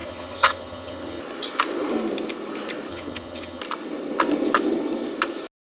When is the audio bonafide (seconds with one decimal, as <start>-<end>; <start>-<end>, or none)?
1.2-2.9; 3.6-5.8